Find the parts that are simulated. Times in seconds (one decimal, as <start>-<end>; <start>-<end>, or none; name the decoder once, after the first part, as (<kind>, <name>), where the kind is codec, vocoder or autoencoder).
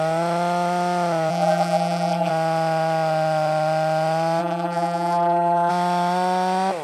1.3-2.3 (vocoder, BigVGAN v2); 4.4-5.7